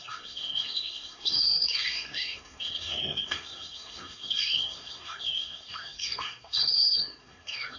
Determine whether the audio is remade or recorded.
remade